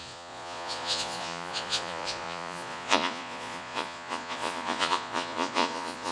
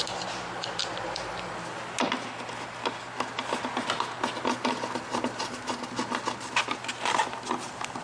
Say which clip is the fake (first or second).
first